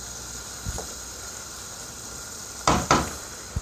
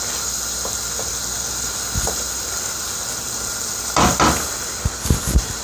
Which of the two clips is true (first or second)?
second